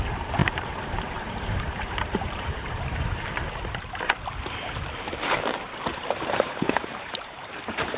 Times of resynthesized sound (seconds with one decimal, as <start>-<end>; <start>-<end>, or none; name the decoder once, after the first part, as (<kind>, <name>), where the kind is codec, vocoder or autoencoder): 0.4-3.4 (vocoder, BigVGAN v2); 5.9-8.0